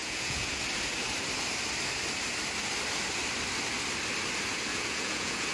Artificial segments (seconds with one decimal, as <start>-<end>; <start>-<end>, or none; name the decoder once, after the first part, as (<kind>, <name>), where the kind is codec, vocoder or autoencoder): 0.0-0.5 (vocoder, Vocos); 4.7-5.5